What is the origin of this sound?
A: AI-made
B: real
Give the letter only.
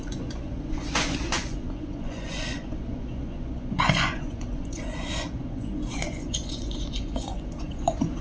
A